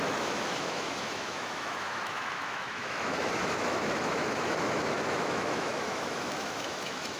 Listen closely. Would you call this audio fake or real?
fake